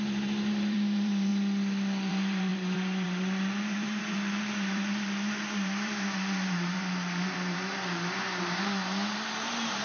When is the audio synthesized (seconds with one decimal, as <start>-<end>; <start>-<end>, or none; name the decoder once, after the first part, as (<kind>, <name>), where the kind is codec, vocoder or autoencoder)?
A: 0.0-1.3 (vocoder, BigVGAN v2); 2.1-9.8